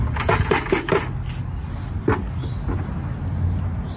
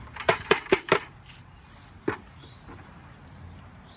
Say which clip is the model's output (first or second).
second